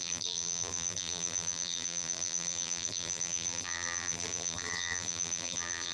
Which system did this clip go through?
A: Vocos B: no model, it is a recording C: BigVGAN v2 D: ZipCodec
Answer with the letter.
C